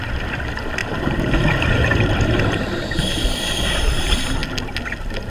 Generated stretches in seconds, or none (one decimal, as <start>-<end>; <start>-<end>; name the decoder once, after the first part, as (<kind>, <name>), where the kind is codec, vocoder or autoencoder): 0.8-3.4 (vocoder, BigVGAN v2)